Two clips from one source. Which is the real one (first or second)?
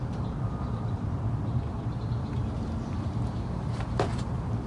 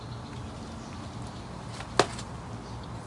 second